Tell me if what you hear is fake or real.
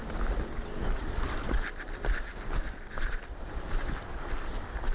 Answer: real